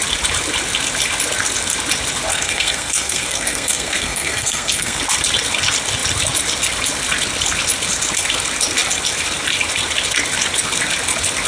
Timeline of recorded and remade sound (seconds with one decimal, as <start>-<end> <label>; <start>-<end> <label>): 0.0-2.3 recorded; 2.3-5.0 remade; 5.0-11.5 recorded